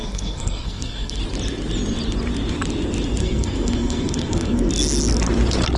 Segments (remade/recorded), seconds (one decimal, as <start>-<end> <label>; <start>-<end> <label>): 0.0-1.2 remade; 1.2-3.2 recorded; 3.2-4.7 remade; 4.7-5.8 recorded